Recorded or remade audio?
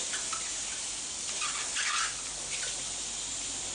recorded